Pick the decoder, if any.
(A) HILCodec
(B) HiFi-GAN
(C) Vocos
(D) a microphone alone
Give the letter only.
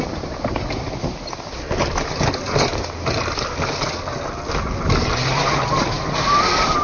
D